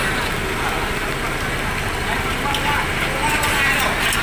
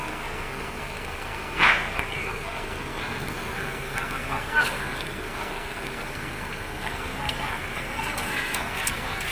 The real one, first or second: first